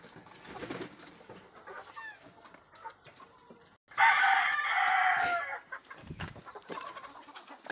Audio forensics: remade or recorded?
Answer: recorded